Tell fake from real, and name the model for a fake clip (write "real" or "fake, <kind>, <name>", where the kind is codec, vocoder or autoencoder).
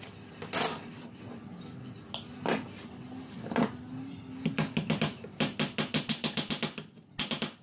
real